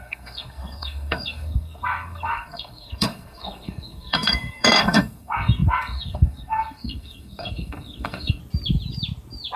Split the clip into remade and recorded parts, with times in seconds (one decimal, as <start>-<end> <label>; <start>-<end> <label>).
0.0-8.4 remade; 8.4-9.6 recorded